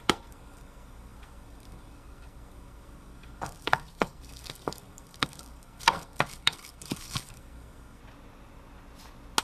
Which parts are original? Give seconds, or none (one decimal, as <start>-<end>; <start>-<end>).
8.0-9.4

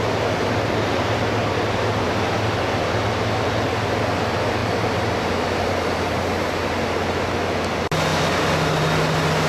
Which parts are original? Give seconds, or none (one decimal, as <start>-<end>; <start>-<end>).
0.0-9.5

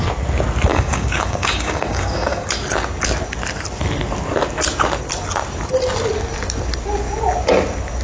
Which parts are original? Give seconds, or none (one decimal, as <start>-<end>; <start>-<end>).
0.0-0.7; 2.5-8.0

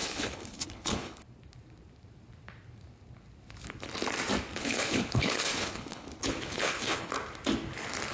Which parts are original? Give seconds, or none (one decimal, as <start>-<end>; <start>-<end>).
1.2-4.6; 7.1-8.1

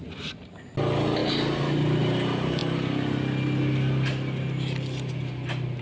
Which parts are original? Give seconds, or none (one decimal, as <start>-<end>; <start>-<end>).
0.0-5.8